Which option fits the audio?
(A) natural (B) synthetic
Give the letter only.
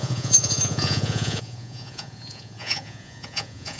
B